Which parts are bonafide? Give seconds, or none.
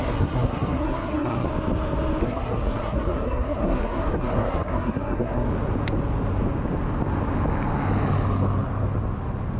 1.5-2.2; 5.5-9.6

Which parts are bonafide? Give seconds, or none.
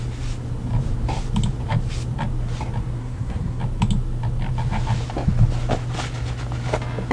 0.0-3.0; 3.6-7.1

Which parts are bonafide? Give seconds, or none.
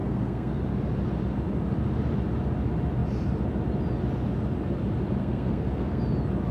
0.6-5.2; 6.0-6.5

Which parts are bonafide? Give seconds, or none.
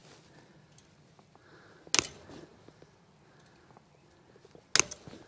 0.0-5.3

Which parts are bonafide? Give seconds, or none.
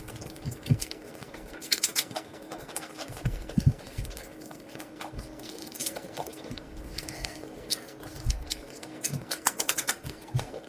none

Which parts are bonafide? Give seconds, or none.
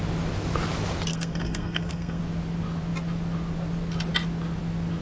0.0-1.1; 2.2-5.0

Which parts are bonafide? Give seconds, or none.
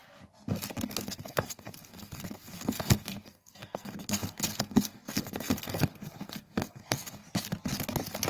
0.0-0.9; 7.2-8.3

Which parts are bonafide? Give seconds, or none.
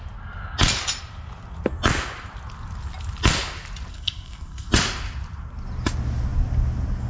0.0-3.9; 4.7-7.1